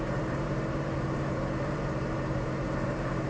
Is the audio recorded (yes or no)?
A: no